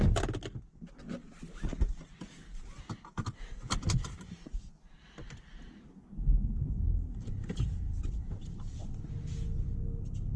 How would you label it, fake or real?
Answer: real